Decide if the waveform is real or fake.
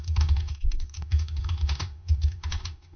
fake